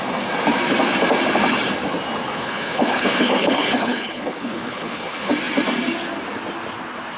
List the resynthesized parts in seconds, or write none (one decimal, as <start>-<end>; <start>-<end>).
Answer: 2.3-5.3